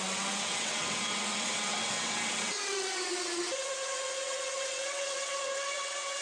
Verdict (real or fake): fake